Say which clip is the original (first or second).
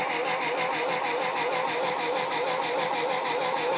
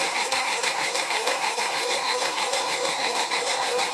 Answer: first